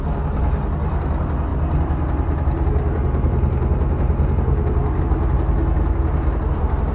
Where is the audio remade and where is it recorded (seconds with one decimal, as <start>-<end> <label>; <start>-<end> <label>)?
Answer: 0.0-6.9 recorded

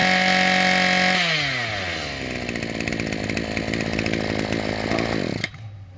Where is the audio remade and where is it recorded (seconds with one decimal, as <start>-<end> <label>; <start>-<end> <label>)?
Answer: 0.0-6.0 recorded

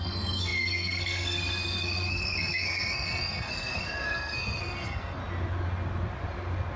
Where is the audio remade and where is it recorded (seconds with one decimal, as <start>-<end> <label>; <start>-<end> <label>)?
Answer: 0.0-5.2 remade; 5.2-6.8 recorded